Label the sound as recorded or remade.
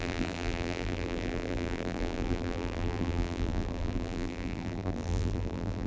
remade